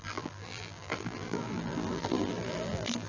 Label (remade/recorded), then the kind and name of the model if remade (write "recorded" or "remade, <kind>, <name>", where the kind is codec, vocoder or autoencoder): remade, vocoder, BigVGAN v2